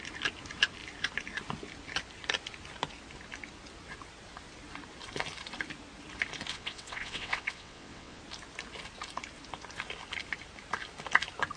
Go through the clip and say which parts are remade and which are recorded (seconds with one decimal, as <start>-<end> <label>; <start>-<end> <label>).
0.0-6.5 recorded; 6.5-8.2 remade; 8.2-11.6 recorded